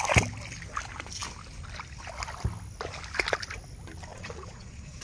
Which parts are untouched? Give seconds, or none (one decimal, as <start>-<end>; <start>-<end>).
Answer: 0.0-4.1